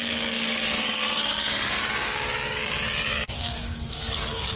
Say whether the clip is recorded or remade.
remade